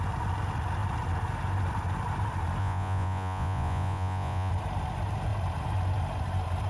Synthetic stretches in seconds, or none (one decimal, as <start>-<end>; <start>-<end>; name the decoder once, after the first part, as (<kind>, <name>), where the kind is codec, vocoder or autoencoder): 2.6-4.5 (vocoder, Vocos)